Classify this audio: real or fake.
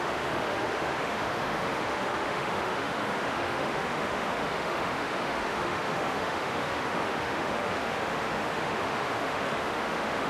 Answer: fake